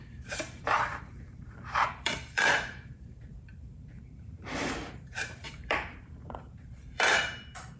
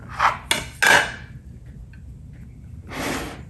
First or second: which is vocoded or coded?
first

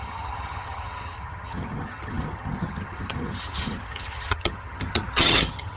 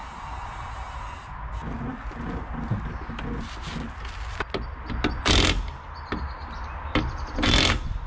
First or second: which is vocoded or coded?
first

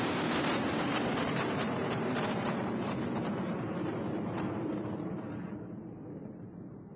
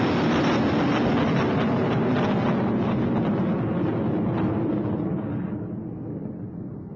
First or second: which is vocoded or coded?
first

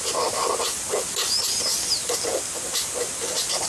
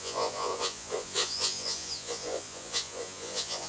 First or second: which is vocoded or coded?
second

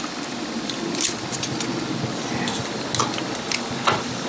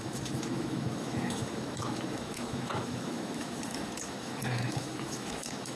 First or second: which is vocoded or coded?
second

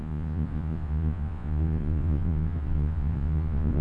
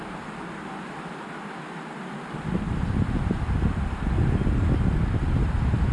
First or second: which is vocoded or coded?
first